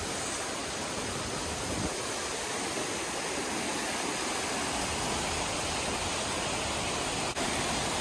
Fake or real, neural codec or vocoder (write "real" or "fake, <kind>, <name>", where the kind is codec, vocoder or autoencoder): real